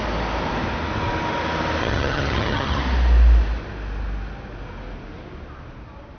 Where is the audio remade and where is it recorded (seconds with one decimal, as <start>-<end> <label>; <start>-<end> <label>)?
0.0-1.8 recorded; 1.8-2.8 remade; 2.8-6.2 recorded